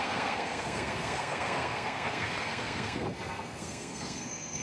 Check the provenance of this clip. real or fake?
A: fake